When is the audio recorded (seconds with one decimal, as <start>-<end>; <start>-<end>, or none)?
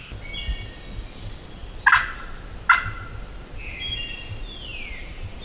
0.0-4.7